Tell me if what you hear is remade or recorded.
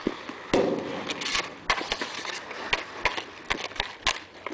recorded